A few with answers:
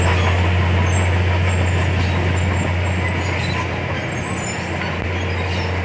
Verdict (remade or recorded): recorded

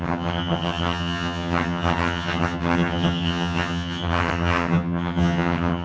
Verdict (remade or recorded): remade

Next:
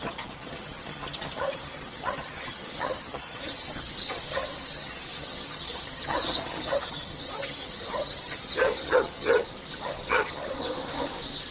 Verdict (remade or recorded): remade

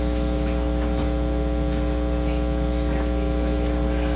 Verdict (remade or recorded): recorded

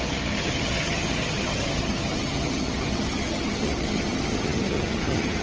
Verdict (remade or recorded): remade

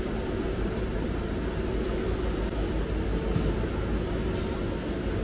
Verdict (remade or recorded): recorded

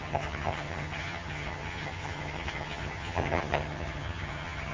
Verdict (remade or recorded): remade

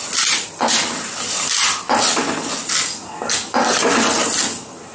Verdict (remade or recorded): recorded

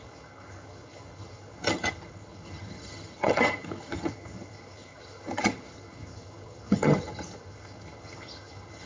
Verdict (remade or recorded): remade